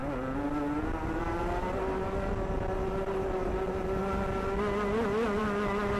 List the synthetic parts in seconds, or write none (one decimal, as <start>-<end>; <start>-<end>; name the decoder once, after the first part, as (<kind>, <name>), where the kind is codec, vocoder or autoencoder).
none